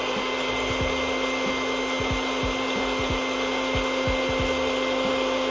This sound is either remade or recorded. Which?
recorded